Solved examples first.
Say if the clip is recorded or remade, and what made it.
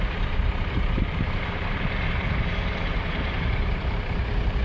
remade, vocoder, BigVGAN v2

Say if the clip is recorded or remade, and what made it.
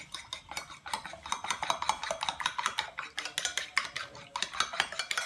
recorded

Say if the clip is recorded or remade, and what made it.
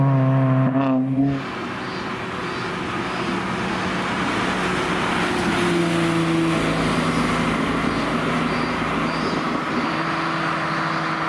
recorded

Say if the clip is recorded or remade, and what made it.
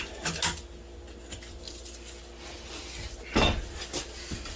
recorded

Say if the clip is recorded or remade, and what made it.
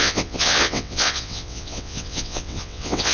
remade, vocoder, WaveNeXt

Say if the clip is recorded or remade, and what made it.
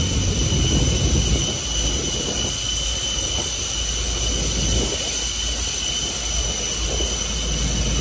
recorded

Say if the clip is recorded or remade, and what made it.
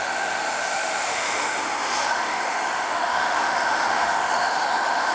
remade, autoencoder, DAC-VAE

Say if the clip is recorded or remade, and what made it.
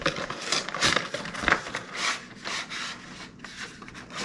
recorded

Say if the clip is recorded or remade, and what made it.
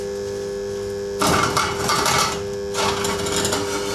recorded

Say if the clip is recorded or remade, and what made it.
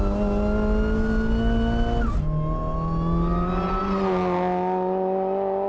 recorded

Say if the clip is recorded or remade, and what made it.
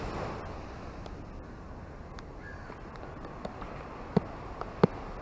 recorded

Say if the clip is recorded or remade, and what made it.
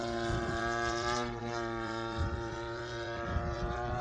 remade, vocoder, Vocos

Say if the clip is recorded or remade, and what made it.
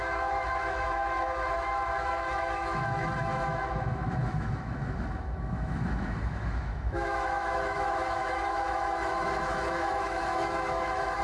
remade, autoencoder, DAC-VAE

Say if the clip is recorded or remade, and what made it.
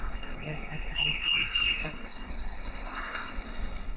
remade, codec, SNAC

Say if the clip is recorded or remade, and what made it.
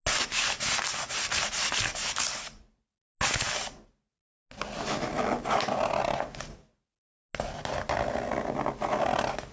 recorded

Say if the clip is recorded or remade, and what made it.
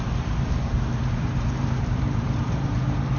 remade, vocoder, BigVGAN v2